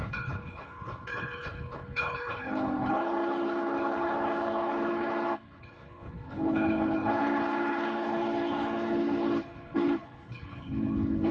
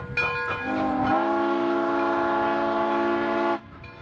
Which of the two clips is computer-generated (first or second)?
first